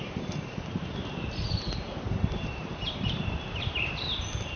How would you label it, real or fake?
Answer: fake